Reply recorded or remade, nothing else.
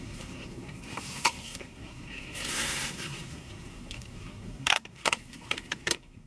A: remade